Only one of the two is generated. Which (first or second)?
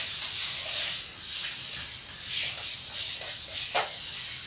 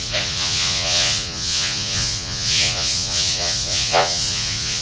second